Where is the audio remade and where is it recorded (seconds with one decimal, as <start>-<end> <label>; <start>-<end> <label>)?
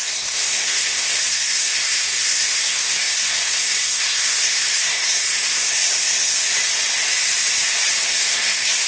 0.0-6.3 remade; 6.3-8.0 recorded; 8.0-8.9 remade